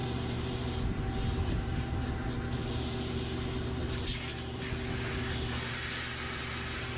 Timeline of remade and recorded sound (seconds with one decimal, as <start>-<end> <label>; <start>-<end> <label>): 0.0-7.0 recorded

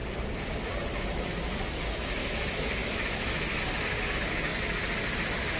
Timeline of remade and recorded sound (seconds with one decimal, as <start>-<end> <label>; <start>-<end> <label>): 0.0-2.2 recorded; 2.2-3.6 remade; 3.6-5.6 recorded

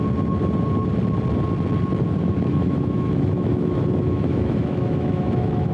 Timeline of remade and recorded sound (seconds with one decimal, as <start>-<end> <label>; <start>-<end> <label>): 0.0-2.2 recorded; 2.2-5.7 remade

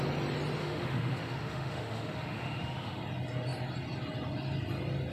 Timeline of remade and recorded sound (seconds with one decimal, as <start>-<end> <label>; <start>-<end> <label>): 0.0-0.6 recorded; 0.6-3.0 remade; 3.0-5.1 recorded

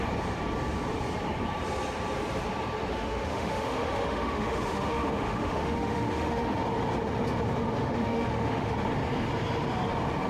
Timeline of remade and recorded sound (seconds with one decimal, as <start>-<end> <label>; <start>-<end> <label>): 0.0-2.9 recorded; 2.9-6.6 remade; 6.6-7.8 recorded; 7.8-8.7 remade; 8.7-10.3 recorded

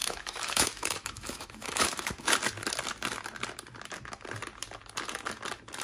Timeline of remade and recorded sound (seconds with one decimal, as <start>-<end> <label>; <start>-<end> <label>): 0.0-2.3 remade; 2.3-5.8 recorded

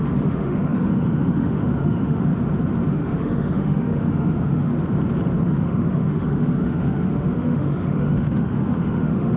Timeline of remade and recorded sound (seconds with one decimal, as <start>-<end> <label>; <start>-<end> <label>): 0.0-2.3 remade; 2.3-2.9 recorded; 2.9-4.7 remade; 4.7-5.5 recorded; 5.5-9.4 remade